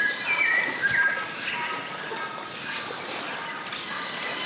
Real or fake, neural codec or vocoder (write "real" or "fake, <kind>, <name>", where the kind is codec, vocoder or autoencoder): real